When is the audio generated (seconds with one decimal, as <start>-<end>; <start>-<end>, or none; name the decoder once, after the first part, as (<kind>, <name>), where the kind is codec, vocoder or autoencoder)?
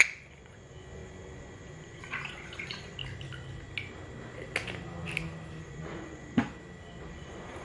0.0-3.0 (vocoder, Vocos); 5.6-6.5; 7.1-7.6